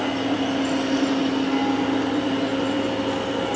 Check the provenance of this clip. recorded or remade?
recorded